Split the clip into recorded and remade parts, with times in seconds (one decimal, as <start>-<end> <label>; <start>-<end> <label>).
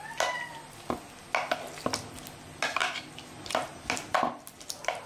0.0-5.1 recorded